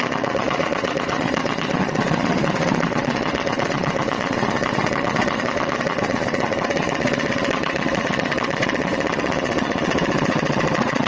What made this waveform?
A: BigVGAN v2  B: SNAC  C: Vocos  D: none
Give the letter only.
C